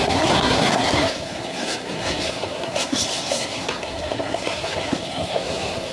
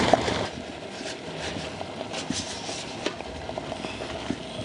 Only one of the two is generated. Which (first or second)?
first